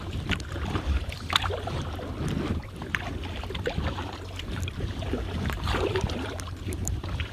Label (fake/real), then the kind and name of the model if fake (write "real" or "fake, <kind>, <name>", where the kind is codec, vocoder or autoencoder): fake, vocoder, BigVGAN v2